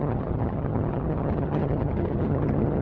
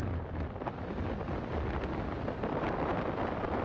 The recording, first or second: second